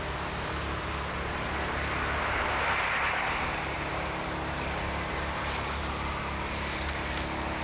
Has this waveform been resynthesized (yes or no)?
no